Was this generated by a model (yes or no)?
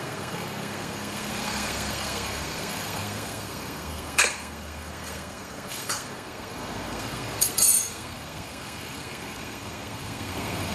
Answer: yes